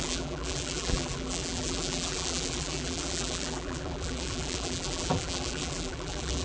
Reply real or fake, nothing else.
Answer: fake